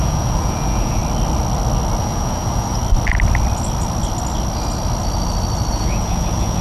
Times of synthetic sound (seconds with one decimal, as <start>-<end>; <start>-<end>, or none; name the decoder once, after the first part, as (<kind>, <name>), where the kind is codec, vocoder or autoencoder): 0.0-1.0 (vocoder, Vocos); 2.0-2.8; 5.7-6.6

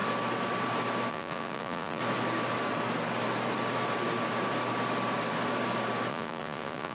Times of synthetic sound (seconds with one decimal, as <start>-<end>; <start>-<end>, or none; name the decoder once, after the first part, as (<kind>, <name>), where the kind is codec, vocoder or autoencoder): 1.1-2.0 (vocoder, Vocos); 6.1-6.9

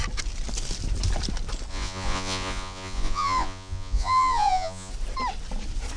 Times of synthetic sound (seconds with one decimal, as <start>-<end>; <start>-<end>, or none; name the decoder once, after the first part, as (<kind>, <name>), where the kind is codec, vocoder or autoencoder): 1.7-4.9 (vocoder, Vocos)

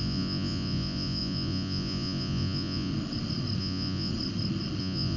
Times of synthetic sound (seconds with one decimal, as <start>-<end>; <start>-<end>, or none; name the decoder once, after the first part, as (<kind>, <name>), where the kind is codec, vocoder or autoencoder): 0.0-2.9 (vocoder, Vocos); 3.6-4.1; 4.8-5.2

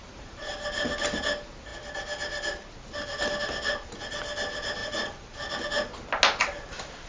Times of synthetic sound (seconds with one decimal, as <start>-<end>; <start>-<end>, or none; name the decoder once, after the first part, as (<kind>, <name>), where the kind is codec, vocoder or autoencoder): 0.0-0.5 (vocoder, Vocos); 4.8-5.4